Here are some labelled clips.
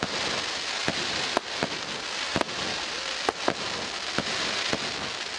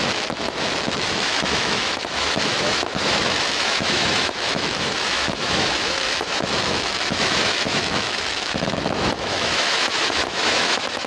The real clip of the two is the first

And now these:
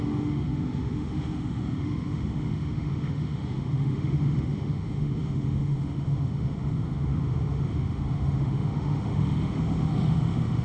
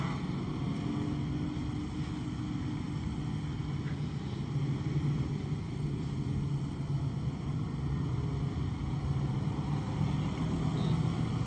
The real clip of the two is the second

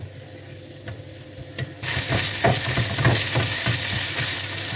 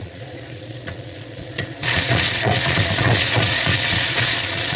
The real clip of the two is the first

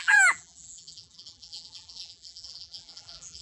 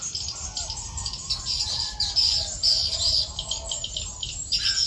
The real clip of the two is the second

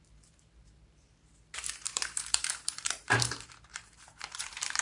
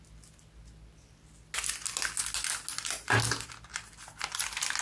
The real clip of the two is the second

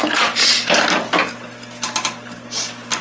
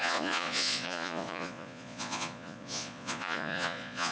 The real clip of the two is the first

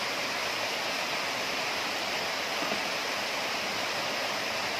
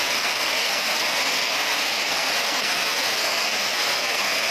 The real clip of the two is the first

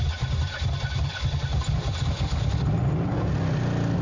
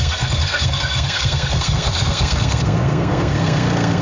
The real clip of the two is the first